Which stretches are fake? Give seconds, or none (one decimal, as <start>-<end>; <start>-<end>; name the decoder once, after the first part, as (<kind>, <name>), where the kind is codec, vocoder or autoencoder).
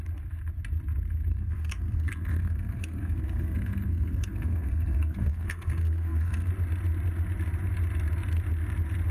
1.3-6.5 (codec, SNAC)